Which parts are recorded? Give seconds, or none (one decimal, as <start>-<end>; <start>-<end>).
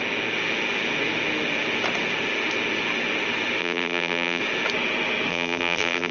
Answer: 0.0-3.6; 4.4-5.3